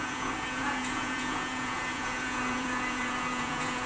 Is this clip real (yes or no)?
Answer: no